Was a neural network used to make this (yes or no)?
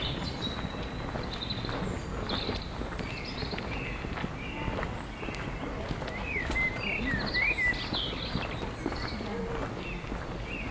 no